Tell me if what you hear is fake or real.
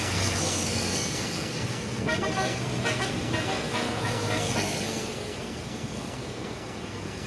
fake